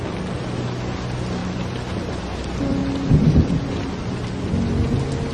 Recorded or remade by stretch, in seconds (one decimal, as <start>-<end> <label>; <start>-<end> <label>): 0.0-5.3 recorded